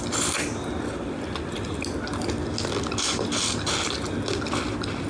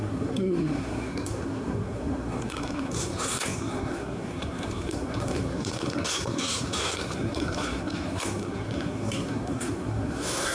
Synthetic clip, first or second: second